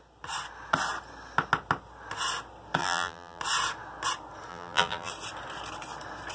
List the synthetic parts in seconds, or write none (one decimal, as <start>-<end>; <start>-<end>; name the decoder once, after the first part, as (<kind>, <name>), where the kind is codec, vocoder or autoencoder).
2.8-3.4 (vocoder, BigVGAN v2); 4.5-5.1